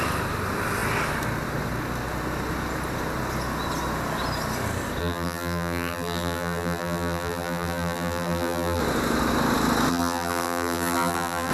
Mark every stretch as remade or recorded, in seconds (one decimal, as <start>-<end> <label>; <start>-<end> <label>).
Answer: 0.0-5.0 recorded; 5.0-8.8 remade; 8.8-9.9 recorded; 9.9-11.5 remade